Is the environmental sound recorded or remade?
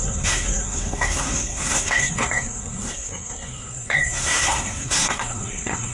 remade